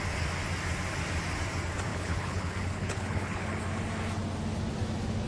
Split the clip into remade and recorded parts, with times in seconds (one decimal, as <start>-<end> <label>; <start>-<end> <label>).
0.0-1.9 recorded; 1.9-3.6 remade; 3.6-5.3 recorded